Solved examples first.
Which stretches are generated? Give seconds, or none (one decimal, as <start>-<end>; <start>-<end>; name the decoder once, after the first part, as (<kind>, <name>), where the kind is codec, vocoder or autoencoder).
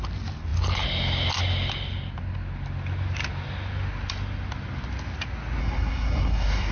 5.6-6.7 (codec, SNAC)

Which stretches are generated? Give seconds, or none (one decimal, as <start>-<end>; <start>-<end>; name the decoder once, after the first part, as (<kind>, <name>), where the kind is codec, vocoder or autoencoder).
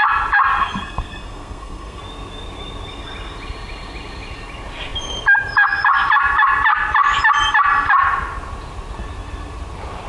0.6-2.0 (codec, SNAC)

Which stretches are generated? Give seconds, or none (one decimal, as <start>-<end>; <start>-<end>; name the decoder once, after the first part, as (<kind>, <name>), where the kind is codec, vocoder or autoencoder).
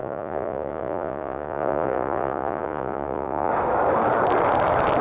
0.0-3.5 (vocoder, Vocos)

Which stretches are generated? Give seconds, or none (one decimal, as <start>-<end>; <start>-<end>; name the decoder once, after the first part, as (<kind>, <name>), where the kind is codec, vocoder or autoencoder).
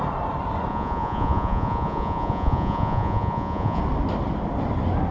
0.7-3.8 (vocoder, Vocos)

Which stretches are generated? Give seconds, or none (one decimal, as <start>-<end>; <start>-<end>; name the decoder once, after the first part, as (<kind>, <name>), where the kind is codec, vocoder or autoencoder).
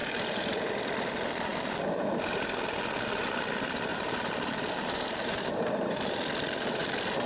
0.0-0.7 (vocoder, BigVGAN v2); 3.9-6.2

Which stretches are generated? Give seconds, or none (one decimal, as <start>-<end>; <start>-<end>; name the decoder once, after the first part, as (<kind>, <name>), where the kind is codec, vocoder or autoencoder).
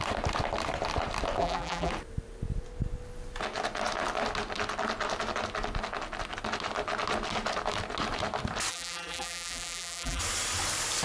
1.4-1.9 (vocoder, BigVGAN v2); 8.7-10.2